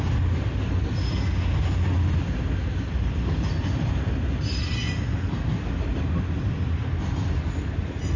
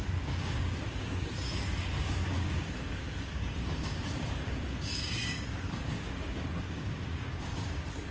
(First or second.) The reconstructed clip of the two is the second